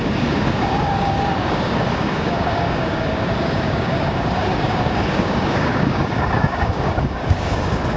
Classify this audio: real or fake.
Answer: fake